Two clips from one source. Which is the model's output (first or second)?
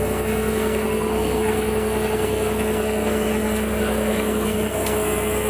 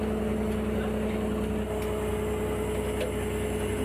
first